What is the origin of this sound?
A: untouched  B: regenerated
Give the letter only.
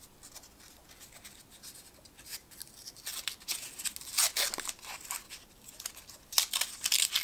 A